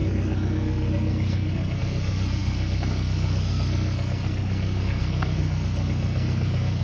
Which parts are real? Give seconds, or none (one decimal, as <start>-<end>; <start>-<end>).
none